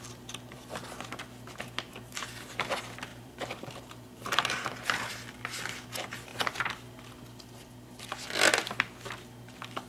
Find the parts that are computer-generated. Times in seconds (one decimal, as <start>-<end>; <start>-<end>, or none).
3.1-5.1